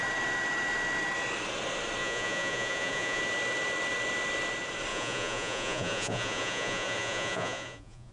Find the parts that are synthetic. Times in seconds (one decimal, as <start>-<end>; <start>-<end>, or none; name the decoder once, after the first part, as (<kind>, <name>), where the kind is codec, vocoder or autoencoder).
2.0-3.2 (vocoder, Vocos); 4.9-8.1